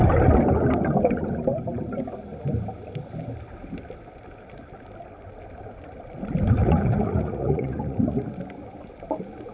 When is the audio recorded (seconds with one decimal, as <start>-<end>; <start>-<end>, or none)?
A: 0.0-6.6; 8.3-9.5

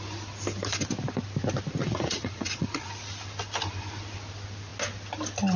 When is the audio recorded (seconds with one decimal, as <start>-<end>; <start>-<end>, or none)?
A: 0.0-1.8; 2.9-5.6

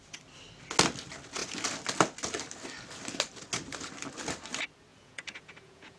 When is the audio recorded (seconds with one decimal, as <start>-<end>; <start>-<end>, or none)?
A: 0.0-4.9

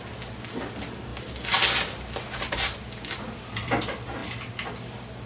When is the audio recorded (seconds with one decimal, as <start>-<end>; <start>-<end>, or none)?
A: 0.0-5.3

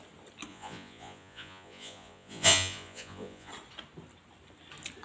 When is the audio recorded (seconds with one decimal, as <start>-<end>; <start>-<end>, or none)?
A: 0.0-0.5; 3.5-5.0

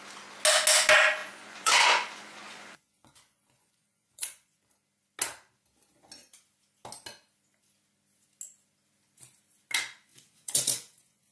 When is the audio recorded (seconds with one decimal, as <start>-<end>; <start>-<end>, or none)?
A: 0.0-1.2; 4.6-10.1

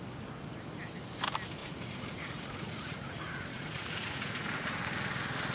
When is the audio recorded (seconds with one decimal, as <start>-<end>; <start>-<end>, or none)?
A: 0.0-1.6; 4.8-5.5